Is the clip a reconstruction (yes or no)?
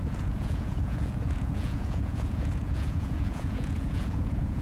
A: yes